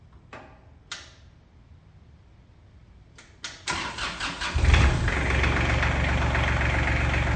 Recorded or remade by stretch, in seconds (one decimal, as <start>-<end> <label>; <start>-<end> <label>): 0.0-7.4 recorded